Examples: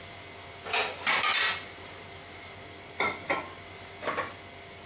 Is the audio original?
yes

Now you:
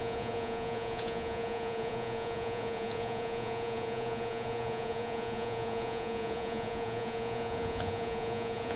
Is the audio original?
no